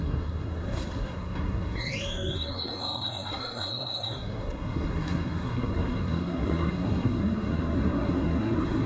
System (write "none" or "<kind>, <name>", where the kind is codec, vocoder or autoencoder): codec, SNAC